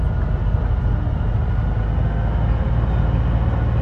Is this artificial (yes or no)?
no